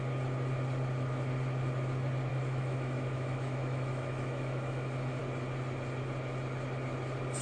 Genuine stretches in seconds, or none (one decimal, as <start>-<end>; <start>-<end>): 0.0-2.3; 5.2-7.4